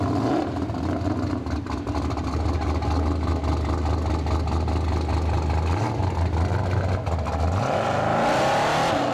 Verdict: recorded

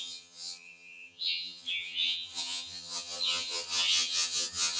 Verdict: remade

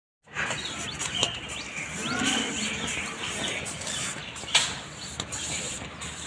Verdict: recorded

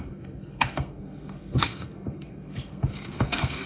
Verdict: remade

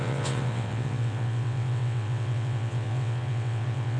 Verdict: remade